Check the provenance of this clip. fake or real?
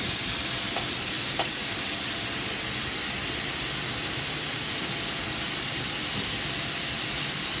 real